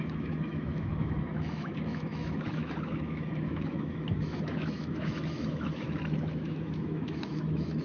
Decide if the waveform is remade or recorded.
remade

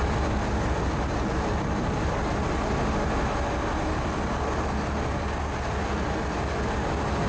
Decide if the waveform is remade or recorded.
recorded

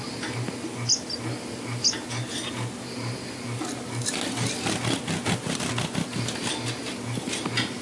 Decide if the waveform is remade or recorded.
recorded